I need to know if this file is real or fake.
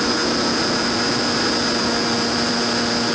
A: real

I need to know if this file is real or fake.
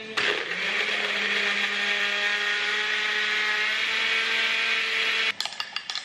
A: real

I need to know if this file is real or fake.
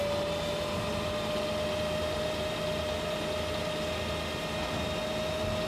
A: real